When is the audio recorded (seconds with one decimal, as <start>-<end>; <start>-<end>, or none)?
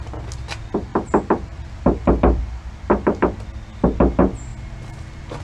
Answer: 0.0-0.9; 2.4-5.4